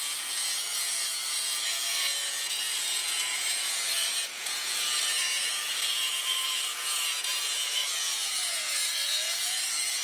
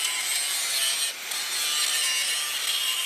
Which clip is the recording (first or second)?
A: second